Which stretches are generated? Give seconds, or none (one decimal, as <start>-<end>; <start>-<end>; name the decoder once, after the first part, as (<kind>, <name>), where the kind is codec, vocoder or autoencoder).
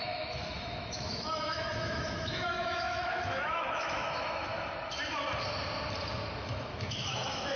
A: 0.0-4.5 (autoencoder, DAC-VAE); 6.4-7.6